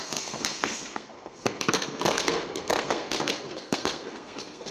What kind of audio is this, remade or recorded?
remade